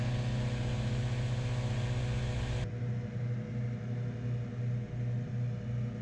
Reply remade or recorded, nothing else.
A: recorded